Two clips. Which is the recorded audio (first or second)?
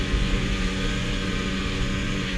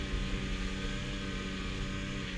second